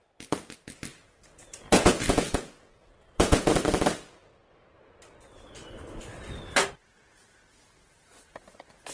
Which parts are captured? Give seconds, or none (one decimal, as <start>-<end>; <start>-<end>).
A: 0.0-0.9; 3.5-8.9